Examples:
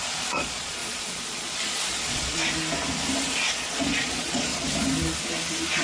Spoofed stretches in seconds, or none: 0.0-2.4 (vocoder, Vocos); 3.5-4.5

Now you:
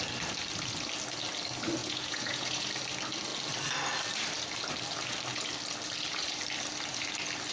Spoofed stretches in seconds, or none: 1.8-2.7 (vocoder, Vocos)

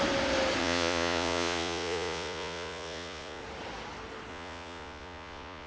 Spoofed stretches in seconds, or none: 0.6-3.4 (vocoder, Vocos); 4.3-5.7

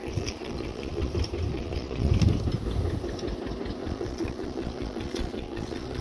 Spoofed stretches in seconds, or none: 0.0-1.1 (vocoder, Vocos); 1.5-2.1; 3.8-6.0

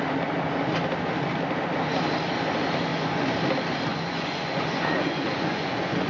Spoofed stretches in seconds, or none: 2.9-3.4 (vocoder, Vocos); 3.9-6.1

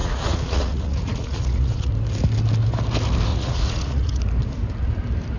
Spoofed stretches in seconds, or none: 0.0-1.9 (vocoder, Vocos); 3.3-4.2

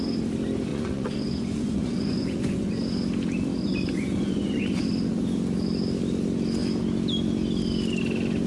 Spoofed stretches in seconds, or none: 0.7-2.7 (vocoder, Vocos); 3.6-4.8